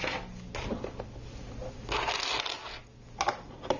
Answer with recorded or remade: recorded